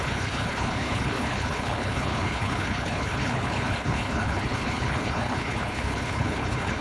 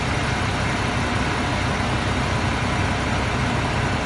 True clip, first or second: second